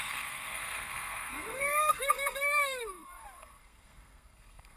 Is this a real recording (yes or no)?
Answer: no